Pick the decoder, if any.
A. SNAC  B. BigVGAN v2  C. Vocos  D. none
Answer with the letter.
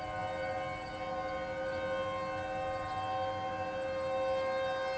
D